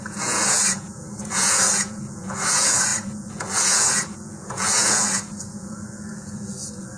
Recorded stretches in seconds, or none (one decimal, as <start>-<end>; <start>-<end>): none